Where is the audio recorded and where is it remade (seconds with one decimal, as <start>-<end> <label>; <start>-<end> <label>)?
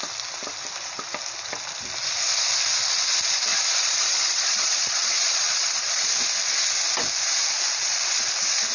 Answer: 0.0-3.5 recorded; 3.5-6.1 remade; 6.1-8.7 recorded